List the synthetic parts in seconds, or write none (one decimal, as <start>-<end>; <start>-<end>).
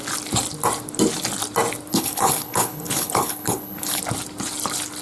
1.9-4.0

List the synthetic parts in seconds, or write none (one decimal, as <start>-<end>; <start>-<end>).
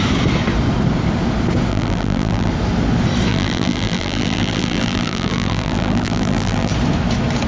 1.7-2.5; 3.3-6.7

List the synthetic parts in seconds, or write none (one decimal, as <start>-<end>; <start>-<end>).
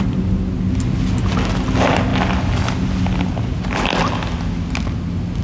none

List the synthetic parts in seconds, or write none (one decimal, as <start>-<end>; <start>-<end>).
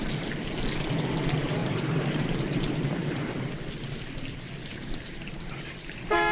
1.6-3.5; 4.7-5.3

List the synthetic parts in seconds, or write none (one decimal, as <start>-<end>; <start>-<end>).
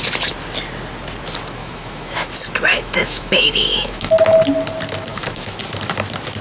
1.6-2.3; 2.7-4.1; 5.1-5.6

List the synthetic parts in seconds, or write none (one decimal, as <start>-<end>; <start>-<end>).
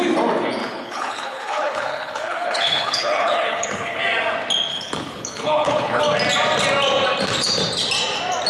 0.6-4.0; 4.7-6.0